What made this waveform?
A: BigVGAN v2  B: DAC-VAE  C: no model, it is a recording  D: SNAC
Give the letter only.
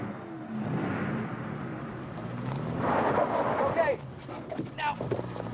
C